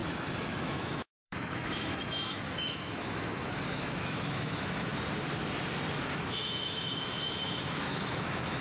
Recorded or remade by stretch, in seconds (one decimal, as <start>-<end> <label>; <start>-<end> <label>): 0.0-0.6 recorded; 0.6-4.9 remade; 4.9-5.9 recorded; 5.9-8.6 remade